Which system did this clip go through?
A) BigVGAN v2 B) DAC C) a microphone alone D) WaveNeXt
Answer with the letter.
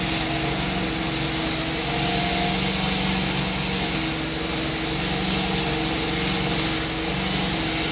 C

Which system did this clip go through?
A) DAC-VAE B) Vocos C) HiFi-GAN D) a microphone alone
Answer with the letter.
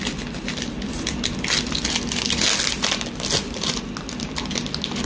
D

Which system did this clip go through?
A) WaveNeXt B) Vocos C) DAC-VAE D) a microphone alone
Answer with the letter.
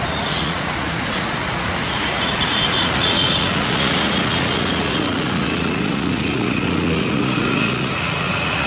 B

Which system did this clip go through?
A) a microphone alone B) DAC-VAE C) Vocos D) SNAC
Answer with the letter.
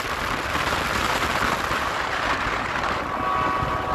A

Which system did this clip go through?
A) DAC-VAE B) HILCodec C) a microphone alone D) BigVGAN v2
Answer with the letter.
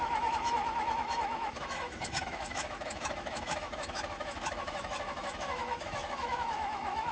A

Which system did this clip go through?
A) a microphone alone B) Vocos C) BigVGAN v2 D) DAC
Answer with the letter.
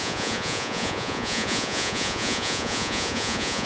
B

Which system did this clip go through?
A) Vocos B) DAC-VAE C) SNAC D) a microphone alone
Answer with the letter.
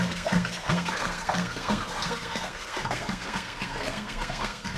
C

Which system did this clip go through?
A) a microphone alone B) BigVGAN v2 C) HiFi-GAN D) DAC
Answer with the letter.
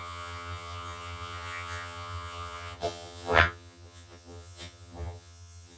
C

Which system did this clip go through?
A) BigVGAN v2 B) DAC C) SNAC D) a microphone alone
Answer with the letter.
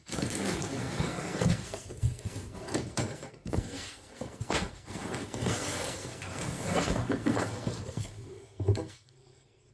C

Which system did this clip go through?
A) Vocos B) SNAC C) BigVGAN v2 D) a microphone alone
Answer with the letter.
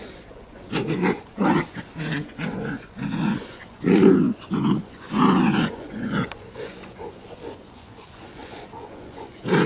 A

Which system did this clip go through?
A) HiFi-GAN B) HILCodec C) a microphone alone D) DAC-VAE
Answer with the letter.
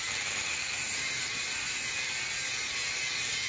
C